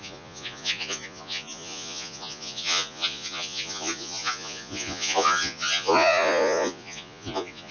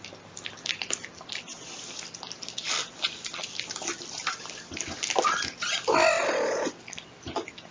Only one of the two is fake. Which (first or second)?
first